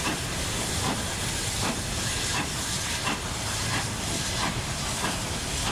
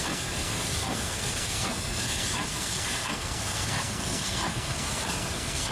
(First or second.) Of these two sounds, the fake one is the second